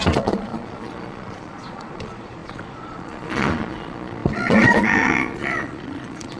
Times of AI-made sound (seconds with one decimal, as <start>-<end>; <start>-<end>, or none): 0.0-6.4